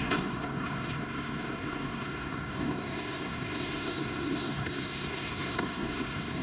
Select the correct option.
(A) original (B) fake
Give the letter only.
B